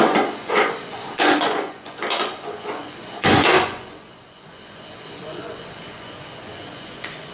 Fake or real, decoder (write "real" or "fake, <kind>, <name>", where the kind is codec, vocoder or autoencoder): fake, vocoder, Vocos